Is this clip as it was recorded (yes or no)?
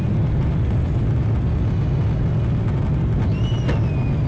yes